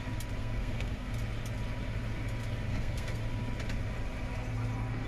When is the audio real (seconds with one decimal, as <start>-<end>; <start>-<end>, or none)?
0.0-0.4; 1.1-2.7; 3.2-5.1